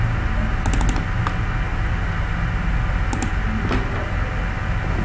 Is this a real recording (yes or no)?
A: yes